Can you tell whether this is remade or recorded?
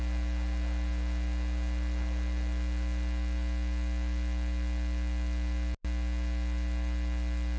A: recorded